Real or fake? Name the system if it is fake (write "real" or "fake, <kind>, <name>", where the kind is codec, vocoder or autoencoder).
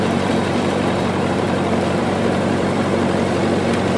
fake, vocoder, BigVGAN v2